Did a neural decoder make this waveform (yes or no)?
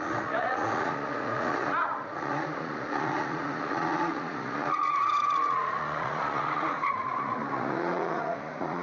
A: yes